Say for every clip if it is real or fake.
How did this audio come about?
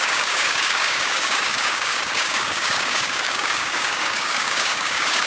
fake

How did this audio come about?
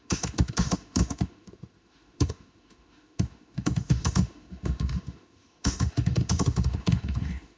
fake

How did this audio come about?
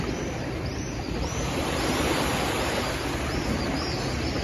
fake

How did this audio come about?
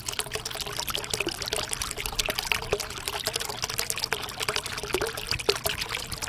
real